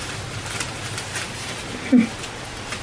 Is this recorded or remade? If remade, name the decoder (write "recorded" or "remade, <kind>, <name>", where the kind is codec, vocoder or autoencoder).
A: recorded